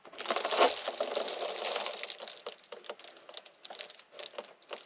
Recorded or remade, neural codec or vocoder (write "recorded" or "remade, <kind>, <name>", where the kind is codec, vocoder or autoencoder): recorded